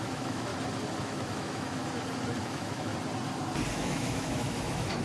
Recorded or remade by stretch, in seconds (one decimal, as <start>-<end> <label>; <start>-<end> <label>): 0.0-0.5 remade; 0.5-1.0 recorded; 1.0-1.8 remade; 1.8-2.4 recorded; 2.4-2.9 remade; 2.9-3.7 recorded; 3.7-5.0 remade